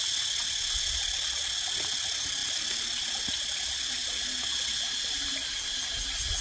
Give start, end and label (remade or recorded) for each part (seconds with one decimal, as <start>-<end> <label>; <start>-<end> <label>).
0.0-6.4 recorded